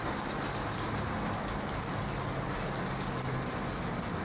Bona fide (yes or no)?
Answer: yes